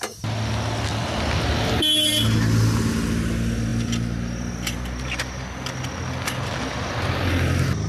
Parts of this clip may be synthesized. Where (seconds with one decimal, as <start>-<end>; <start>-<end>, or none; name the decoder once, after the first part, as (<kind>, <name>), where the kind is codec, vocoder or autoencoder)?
none